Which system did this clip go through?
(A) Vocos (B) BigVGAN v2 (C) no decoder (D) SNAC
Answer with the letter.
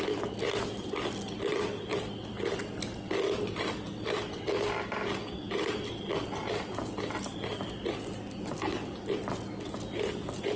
C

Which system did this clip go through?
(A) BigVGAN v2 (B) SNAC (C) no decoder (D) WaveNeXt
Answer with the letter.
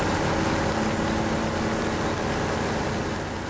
C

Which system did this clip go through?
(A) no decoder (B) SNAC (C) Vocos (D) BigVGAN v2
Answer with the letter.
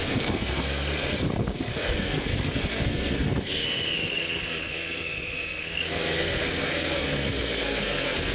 B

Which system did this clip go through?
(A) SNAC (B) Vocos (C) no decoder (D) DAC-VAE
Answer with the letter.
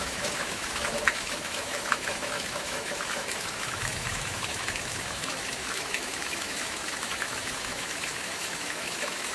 D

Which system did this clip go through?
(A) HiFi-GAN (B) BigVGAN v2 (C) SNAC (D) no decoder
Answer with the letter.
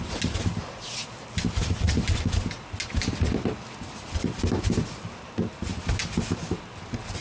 D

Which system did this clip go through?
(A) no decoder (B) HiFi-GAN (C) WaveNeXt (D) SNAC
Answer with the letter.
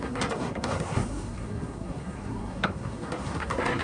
D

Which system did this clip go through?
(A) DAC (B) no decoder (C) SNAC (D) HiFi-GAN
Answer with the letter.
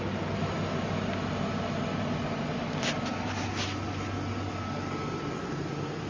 B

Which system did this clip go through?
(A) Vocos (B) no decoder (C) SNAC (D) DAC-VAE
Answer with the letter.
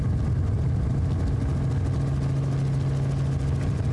B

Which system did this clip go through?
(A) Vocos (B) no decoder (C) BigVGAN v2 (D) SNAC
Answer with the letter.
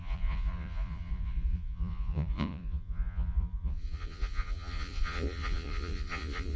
A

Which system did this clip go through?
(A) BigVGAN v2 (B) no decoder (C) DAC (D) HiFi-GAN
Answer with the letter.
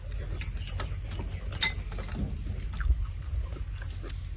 B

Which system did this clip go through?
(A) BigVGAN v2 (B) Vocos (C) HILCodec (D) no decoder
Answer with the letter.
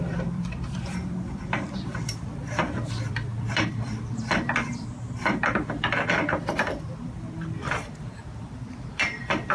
A